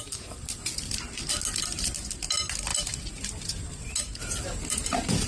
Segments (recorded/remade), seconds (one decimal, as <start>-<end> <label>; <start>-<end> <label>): 0.0-5.3 recorded